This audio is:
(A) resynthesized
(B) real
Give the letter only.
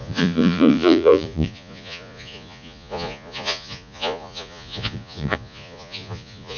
A